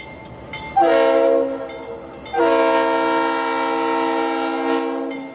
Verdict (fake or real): real